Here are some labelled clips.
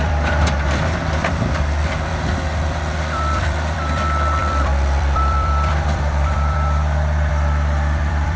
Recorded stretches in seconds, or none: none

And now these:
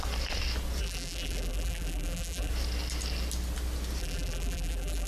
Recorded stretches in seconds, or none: 0.0-0.8; 2.5-4.0

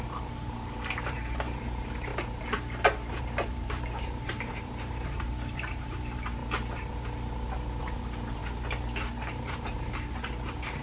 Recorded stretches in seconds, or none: 2.1-3.2; 6.4-7.8; 8.4-9.3

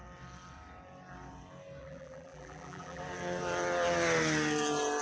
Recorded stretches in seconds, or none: 0.0-1.8; 3.0-5.0

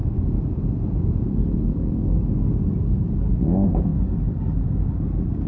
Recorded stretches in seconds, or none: 0.0-5.5